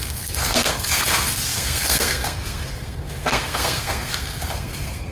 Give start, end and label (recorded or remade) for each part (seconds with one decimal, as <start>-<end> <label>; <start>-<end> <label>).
0.0-5.1 remade